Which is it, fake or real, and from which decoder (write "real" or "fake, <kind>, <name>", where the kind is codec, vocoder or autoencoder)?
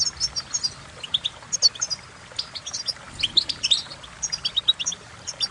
real